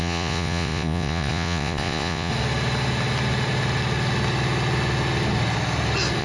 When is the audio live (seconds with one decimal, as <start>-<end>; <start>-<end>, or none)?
2.3-6.2